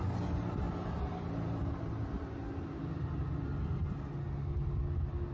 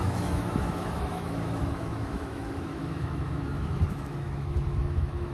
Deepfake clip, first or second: second